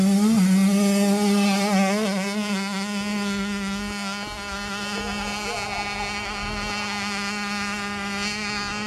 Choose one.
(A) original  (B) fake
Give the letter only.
A